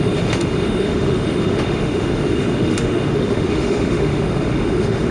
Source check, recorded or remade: remade